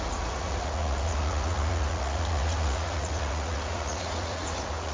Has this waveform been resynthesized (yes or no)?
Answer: yes